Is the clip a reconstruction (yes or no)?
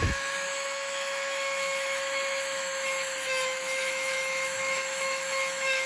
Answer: yes